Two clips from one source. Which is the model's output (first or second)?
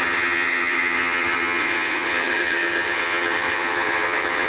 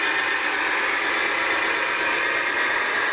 first